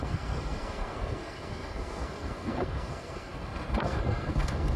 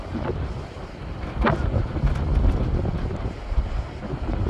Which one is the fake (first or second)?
first